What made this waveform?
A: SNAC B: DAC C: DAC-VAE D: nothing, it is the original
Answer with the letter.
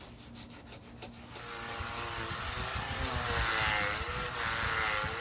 D